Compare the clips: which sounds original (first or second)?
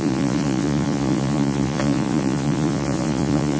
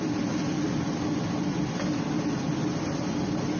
second